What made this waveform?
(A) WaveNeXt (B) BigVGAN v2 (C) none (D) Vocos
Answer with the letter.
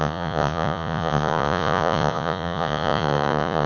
D